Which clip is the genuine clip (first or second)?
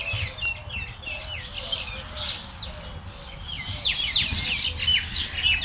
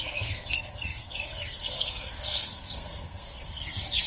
first